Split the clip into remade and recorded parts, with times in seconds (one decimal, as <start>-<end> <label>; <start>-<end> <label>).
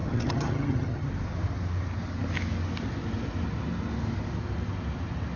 0.0-1.1 remade; 1.1-5.4 recorded